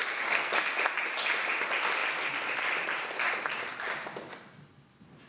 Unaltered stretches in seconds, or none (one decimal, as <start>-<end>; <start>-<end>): 0.5-5.3